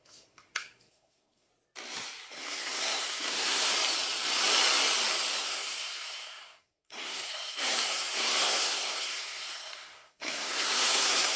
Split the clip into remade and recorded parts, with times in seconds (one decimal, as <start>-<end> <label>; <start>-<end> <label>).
0.0-1.5 remade; 1.5-2.3 recorded; 2.3-3.7 remade; 3.7-5.4 recorded; 5.4-11.4 remade